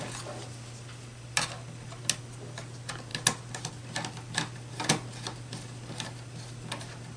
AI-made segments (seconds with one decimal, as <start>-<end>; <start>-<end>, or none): none